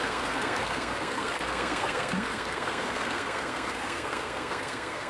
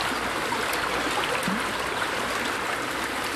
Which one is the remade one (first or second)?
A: first